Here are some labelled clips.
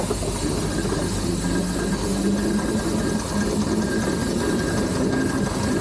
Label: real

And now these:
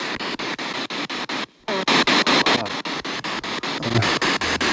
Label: real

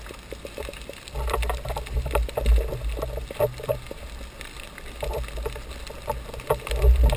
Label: real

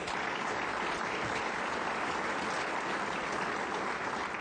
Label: real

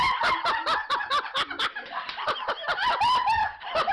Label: real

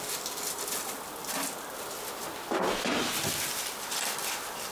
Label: real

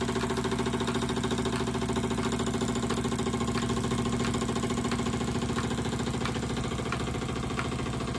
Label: real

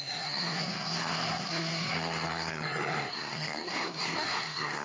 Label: fake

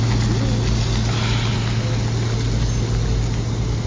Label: real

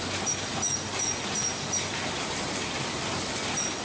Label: real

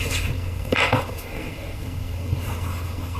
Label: fake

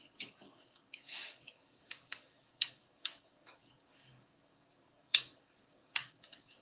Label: fake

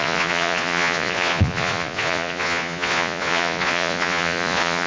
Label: fake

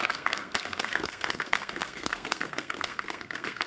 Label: fake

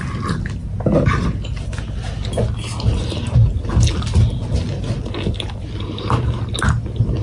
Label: real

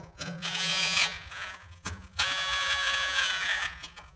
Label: fake